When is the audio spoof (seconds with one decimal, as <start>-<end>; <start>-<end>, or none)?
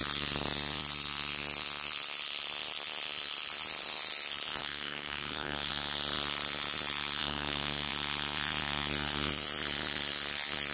4.6-5.7; 7.2-7.9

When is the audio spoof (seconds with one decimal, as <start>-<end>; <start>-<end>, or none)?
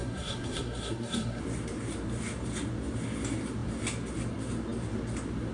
0.0-1.4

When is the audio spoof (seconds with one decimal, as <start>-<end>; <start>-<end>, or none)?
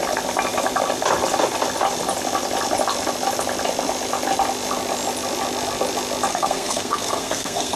6.3-7.8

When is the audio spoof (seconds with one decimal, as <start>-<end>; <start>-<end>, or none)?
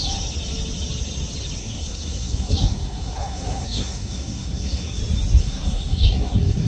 1.6-5.0; 5.4-6.7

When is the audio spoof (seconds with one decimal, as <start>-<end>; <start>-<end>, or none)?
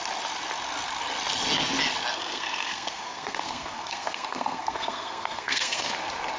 2.1-5.9